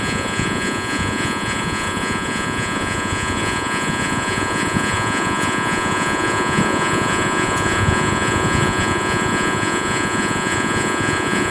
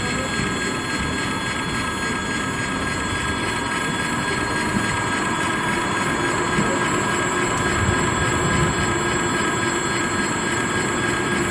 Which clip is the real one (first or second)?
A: second